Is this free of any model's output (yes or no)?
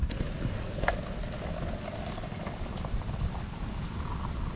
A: yes